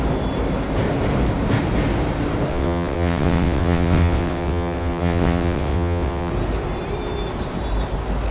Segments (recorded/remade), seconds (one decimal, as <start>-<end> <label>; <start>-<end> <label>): 0.0-2.5 recorded; 2.5-6.3 remade; 6.3-8.3 recorded